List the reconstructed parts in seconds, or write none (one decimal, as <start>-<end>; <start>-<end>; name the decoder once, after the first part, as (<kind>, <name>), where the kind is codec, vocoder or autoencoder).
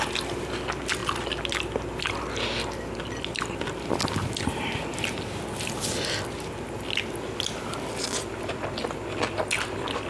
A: none